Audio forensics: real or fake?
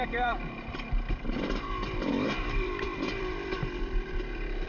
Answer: fake